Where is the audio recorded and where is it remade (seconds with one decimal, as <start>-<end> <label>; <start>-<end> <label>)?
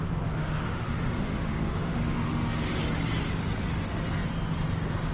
0.0-0.4 recorded; 0.4-2.8 remade; 2.8-5.1 recorded